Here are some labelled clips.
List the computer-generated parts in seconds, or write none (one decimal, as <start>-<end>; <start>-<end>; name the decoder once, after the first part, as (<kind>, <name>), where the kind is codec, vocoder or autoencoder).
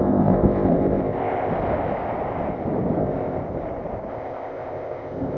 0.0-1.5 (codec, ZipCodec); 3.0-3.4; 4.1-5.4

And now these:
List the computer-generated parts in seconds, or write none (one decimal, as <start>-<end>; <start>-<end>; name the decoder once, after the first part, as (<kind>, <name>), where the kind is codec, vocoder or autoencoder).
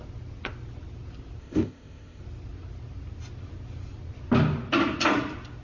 1.4-2.2 (codec, ZipCodec)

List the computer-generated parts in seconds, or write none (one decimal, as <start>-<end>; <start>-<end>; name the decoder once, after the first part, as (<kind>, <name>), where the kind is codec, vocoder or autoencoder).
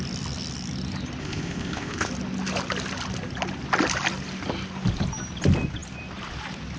1.2-2.1 (codec, ZipCodec)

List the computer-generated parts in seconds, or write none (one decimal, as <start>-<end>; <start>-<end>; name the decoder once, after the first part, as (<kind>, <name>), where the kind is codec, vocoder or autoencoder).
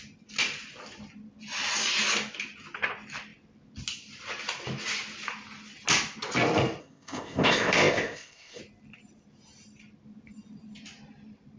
6.8-8.6 (codec, ZipCodec)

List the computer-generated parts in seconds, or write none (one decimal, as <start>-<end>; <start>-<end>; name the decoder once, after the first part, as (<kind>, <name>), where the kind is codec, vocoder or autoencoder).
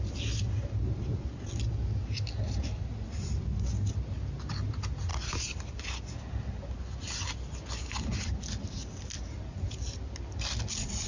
none